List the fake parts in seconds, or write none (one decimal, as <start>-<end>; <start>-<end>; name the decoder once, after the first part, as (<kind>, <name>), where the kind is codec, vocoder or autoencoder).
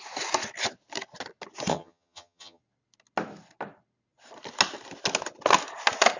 1.7-2.6 (vocoder, HiFi-GAN)